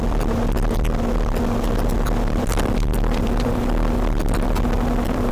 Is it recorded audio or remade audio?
remade